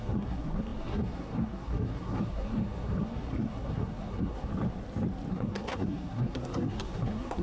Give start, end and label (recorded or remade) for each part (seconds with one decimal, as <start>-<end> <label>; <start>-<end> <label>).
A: 0.0-4.5 remade; 4.5-5.3 recorded; 5.3-7.4 remade